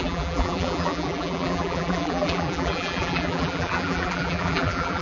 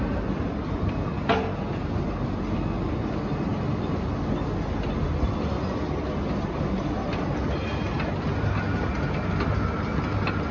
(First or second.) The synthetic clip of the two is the first